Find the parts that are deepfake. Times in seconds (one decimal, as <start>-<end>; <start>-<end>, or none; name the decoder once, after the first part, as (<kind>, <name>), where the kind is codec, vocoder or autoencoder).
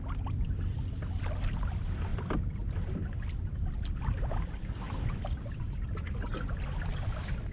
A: 2.1-3.5 (vocoder, BigVGAN v2)